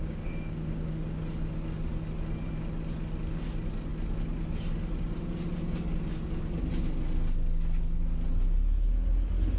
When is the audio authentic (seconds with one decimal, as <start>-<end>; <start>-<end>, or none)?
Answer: 1.0-9.6